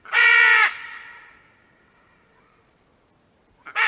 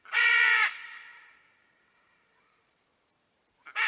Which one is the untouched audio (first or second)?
first